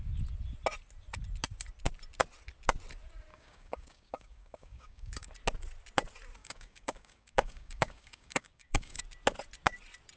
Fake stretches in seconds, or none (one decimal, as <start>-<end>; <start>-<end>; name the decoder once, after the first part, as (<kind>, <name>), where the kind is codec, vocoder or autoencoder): 3.3-5.3 (codec, DAC); 6.4-9.0